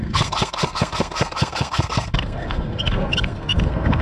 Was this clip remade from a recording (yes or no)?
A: yes